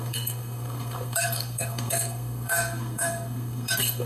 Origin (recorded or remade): remade